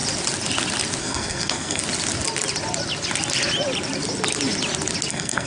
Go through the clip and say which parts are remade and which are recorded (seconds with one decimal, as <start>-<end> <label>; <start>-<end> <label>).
0.0-1.0 recorded; 1.0-1.8 remade; 1.8-5.1 recorded; 5.1-5.5 remade